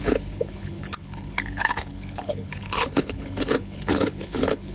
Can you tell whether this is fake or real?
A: fake